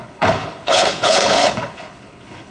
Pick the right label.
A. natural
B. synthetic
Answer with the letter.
B